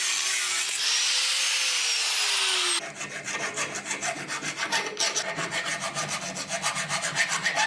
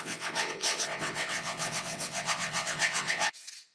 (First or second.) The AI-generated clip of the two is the second